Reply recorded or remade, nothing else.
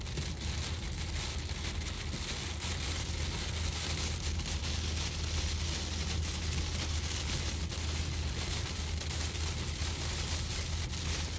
recorded